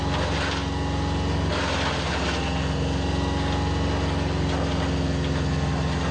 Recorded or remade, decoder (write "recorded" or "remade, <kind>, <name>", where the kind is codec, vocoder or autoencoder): recorded